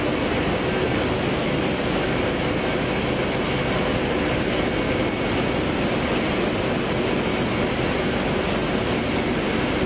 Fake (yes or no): no